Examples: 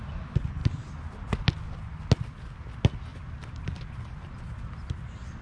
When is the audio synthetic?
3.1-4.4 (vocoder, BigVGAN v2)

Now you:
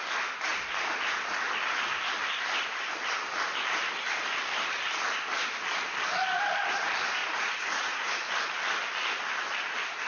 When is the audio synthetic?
7.2-8.2 (vocoder, Vocos)

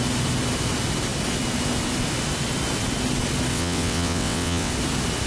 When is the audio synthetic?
3.5-4.7 (vocoder, WaveNeXt)

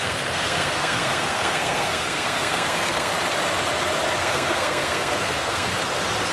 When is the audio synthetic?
0.0-3.1 (codec, SNAC); 4.2-5.7

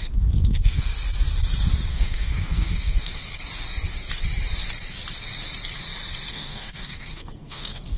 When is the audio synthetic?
0.0-0.9 (codec, SNAC); 1.9-3.2; 6.3-8.0

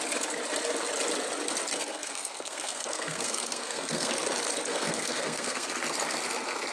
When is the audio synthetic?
1.7-4.1 (codec, SNAC); 4.7-5.7

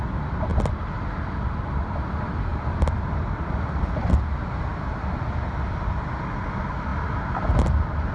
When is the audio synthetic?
none